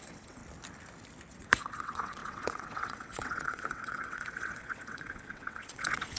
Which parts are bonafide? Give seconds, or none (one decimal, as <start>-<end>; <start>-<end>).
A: 0.4-1.3